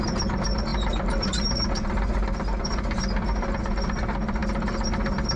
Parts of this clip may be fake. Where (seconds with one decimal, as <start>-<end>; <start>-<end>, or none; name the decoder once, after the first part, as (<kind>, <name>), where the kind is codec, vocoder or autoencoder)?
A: none